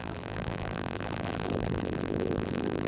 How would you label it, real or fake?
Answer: fake